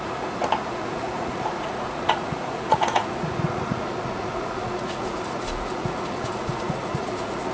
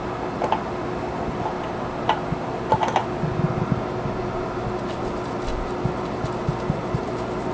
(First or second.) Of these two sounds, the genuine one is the second